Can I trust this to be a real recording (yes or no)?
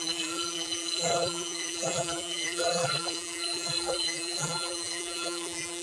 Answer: no